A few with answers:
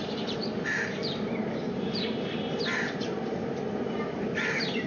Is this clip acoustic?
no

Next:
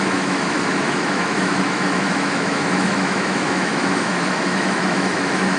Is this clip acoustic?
no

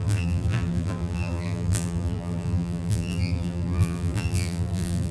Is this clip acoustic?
no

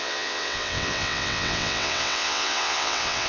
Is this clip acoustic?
no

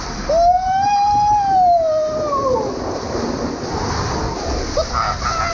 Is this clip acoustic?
yes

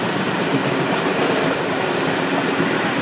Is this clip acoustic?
yes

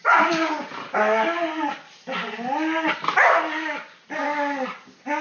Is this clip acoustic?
yes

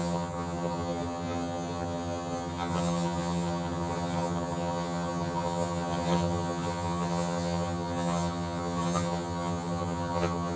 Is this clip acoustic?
no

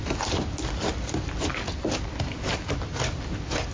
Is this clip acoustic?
yes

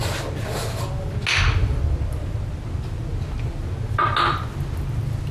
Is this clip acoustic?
yes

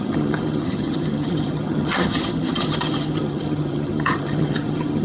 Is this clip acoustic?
no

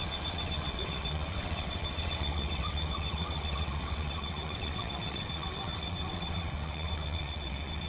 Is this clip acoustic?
no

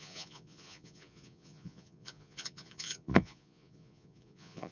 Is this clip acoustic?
no